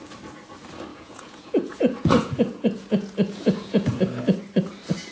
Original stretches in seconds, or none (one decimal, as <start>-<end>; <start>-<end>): 0.0-0.9; 4.0-5.1